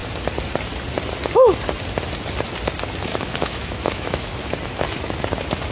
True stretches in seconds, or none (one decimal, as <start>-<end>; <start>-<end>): 0.0-3.1; 4.3-5.7